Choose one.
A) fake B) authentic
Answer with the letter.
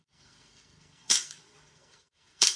A